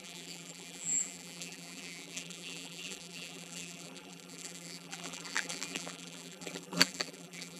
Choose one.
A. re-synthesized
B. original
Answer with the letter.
A